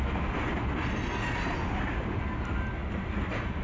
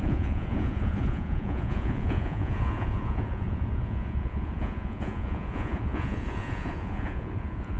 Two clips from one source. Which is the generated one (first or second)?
second